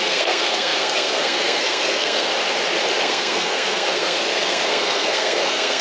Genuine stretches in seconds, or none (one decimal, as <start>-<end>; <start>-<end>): 2.3-3.0